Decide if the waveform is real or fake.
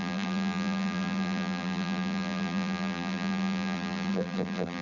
fake